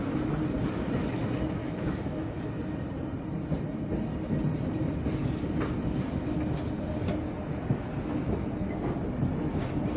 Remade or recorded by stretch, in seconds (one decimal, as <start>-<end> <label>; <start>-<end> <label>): 0.0-1.6 recorded; 1.6-2.5 remade; 2.5-10.0 recorded